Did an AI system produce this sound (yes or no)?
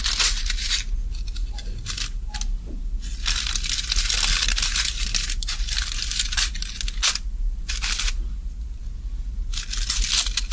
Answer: no